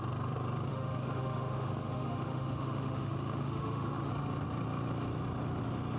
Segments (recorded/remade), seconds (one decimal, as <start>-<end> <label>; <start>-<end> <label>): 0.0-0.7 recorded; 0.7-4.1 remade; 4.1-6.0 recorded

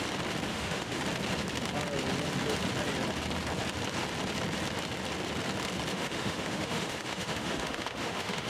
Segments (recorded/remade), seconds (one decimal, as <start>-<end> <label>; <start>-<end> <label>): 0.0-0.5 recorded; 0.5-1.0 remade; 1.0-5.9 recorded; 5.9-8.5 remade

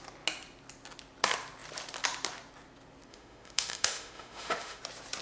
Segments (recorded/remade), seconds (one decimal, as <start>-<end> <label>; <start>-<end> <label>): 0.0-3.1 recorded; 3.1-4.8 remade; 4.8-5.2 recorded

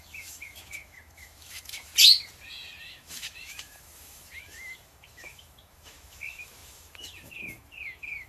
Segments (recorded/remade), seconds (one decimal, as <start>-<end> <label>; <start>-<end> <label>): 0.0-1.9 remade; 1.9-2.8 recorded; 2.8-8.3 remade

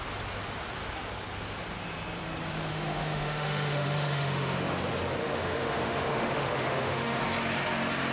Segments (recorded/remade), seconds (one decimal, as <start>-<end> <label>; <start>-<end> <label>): 0.0-2.7 recorded; 2.7-4.8 remade; 4.8-5.2 recorded; 5.2-7.2 remade; 7.2-8.1 recorded

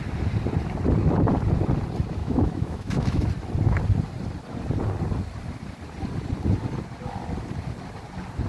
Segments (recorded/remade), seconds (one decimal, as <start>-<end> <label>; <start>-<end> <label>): 0.0-2.2 recorded; 2.2-3.3 remade; 3.3-8.5 recorded